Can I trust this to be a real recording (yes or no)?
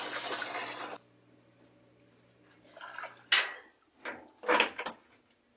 yes